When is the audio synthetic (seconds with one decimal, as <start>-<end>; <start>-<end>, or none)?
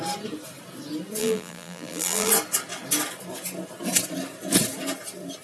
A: 1.2-2.3